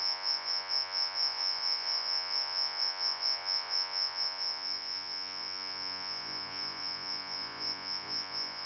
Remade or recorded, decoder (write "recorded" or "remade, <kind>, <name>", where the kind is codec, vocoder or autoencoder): remade, vocoder, Vocos